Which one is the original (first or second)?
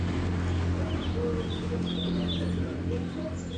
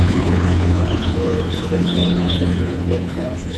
first